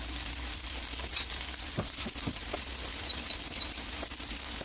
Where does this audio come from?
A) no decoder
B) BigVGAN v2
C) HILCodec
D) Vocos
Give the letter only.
A